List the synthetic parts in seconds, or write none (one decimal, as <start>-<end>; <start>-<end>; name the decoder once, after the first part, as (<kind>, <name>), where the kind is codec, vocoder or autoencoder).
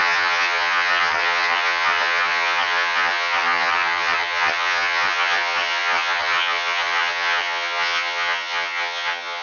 0.0-9.4 (vocoder, HiFi-GAN)